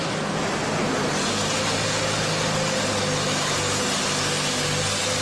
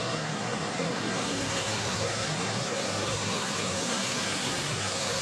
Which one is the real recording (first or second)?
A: first